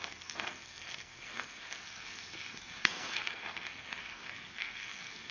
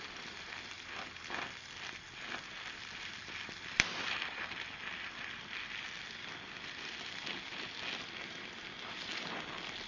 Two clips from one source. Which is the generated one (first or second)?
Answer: first